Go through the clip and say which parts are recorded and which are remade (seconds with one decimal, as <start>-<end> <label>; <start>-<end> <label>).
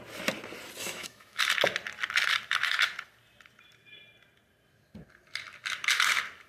0.0-0.8 recorded; 0.8-1.4 remade; 1.4-6.5 recorded